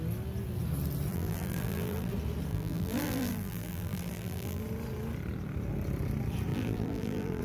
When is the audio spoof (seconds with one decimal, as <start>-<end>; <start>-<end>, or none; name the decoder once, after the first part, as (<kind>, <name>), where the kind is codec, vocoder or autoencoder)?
1.1-2.1 (vocoder, BigVGAN v2); 2.5-4.6; 6.5-7.4